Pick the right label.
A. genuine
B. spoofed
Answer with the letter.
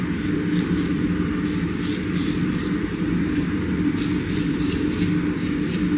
A